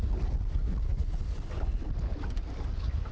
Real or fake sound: real